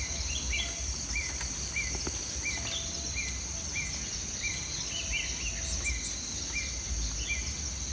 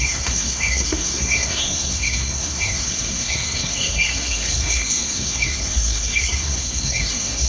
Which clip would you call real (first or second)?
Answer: first